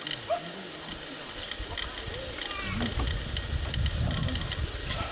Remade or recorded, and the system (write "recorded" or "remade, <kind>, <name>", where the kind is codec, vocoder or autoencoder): recorded